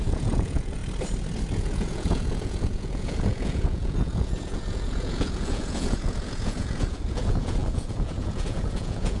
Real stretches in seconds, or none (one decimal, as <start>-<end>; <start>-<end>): 0.8-1.6